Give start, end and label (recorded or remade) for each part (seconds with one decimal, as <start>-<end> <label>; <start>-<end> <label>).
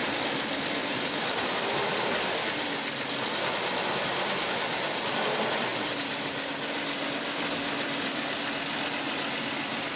0.0-1.9 remade; 1.9-7.6 recorded; 7.6-8.4 remade; 8.4-10.0 recorded